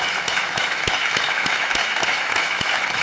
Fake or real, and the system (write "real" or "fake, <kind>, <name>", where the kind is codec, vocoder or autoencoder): fake, autoencoder, DAC-VAE